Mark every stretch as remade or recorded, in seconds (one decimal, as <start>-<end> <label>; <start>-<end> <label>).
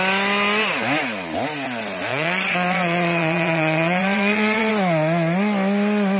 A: 0.0-2.1 recorded; 2.1-4.7 remade; 4.7-6.2 recorded